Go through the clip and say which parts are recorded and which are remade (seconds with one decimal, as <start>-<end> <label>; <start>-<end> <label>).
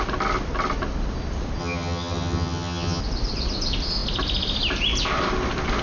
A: 0.0-1.6 recorded; 1.6-3.0 remade; 3.0-5.8 recorded